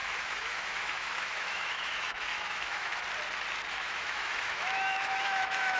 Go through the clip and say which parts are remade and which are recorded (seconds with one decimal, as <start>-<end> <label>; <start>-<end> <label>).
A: 0.0-2.9 remade; 2.9-3.7 recorded; 3.7-5.8 remade